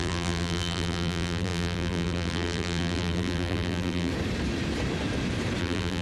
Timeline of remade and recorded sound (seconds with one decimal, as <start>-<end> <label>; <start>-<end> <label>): 0.0-4.1 remade; 4.1-5.6 recorded; 5.6-6.0 remade